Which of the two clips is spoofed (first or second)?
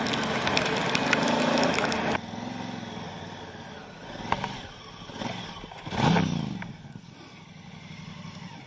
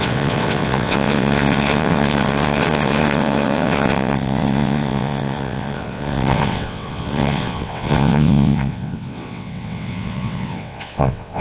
second